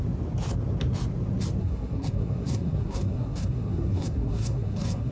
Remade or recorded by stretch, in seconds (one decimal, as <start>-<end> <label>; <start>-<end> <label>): 0.0-1.6 recorded; 1.6-5.1 remade